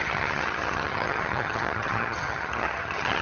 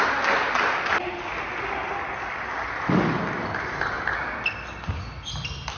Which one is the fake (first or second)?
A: first